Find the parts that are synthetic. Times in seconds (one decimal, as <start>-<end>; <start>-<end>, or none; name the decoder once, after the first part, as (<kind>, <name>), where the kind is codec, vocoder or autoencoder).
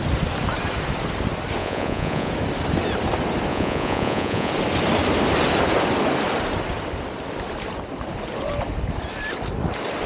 1.6-2.3 (vocoder, Vocos); 3.5-4.5